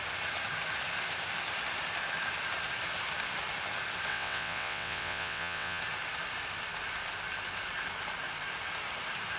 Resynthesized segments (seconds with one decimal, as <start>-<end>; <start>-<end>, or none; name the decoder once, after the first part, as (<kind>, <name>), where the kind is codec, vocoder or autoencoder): 4.1-5.8 (vocoder, WaveNeXt)